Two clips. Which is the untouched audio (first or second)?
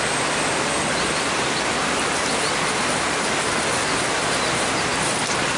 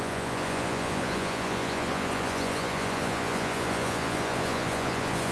first